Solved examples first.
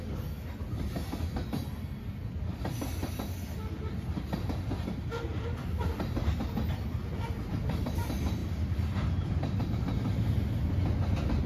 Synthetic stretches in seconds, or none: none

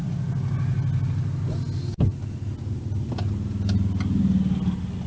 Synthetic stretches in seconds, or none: none

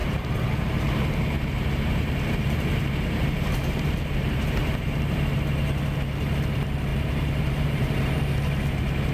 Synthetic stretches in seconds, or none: 0.0-5.2; 6.9-8.2

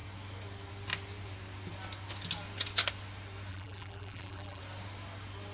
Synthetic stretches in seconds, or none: 3.5-4.6

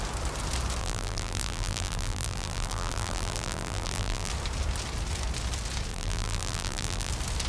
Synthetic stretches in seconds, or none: 0.8-4.3; 5.9-7.1